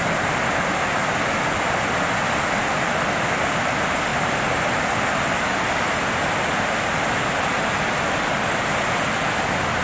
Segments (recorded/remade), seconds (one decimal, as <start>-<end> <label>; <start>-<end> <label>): 0.0-9.8 recorded